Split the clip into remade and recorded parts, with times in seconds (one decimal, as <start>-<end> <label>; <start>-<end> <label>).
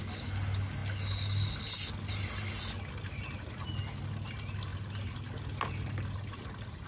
0.0-6.9 recorded